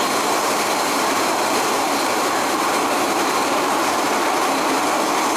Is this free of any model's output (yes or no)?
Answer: no